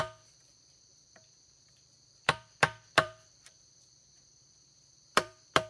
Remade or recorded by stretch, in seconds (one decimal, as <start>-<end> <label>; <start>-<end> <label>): 0.0-5.7 remade